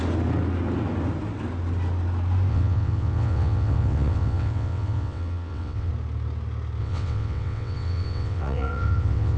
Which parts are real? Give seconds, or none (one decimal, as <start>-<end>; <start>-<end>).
0.0-2.5; 5.9-6.8